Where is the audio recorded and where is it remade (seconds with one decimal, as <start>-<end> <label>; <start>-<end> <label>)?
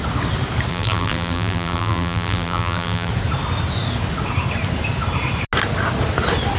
0.0-0.7 recorded; 0.7-3.1 remade; 3.1-6.6 recorded